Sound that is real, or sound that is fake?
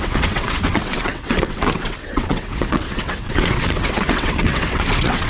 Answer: fake